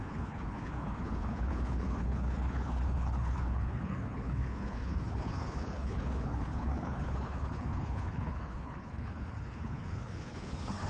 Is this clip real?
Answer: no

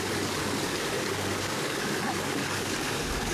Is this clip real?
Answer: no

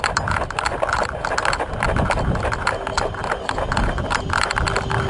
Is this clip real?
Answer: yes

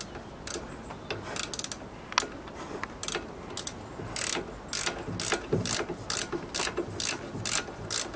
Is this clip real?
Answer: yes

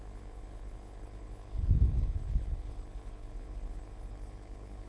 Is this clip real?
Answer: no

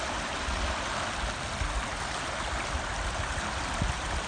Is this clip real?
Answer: yes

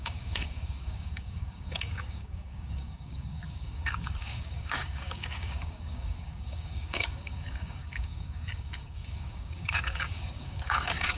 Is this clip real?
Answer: no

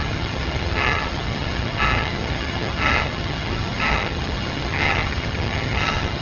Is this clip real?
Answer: no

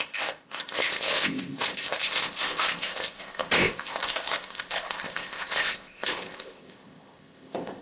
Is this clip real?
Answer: no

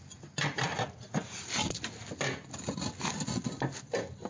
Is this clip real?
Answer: yes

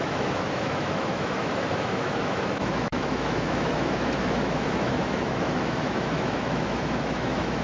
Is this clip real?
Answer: no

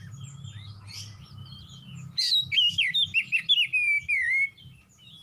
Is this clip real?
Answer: yes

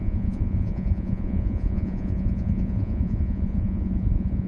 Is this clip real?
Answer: no